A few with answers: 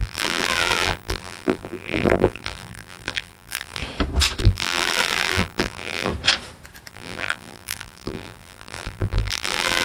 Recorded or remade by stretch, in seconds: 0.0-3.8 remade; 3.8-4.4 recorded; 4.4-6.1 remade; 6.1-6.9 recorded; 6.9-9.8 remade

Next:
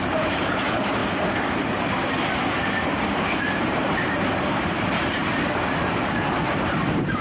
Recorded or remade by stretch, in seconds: 0.0-1.0 remade; 1.0-3.6 recorded; 3.6-5.2 remade; 5.2-6.5 recorded; 6.5-7.2 remade

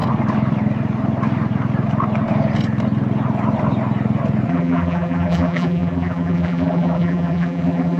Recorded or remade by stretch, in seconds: 0.0-4.5 recorded; 4.5-8.0 remade

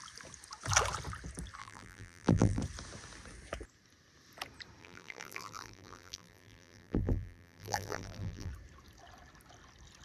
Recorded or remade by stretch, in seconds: 0.0-1.6 recorded; 1.6-2.6 remade; 2.6-4.8 recorded; 4.8-8.5 remade; 8.5-10.0 recorded

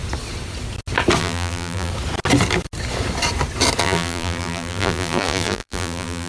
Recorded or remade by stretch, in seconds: 0.0-1.2 recorded; 1.2-1.9 remade; 1.9-3.8 recorded; 3.8-6.3 remade

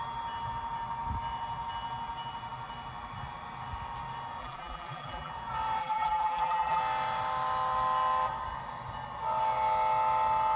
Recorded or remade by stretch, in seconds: 0.0-4.4 recorded; 4.4-5.3 remade; 5.3-5.8 recorded; 5.8-6.8 remade; 6.8-10.6 recorded